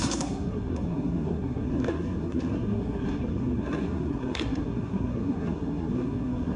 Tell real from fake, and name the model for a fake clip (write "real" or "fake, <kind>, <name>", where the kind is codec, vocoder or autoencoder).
fake, codec, SNAC